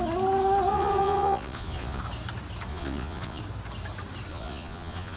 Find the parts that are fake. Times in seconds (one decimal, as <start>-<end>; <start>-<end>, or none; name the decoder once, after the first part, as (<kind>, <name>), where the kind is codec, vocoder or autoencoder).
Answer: 0.7-2.0 (vocoder, Vocos); 2.7-3.4; 4.3-5.2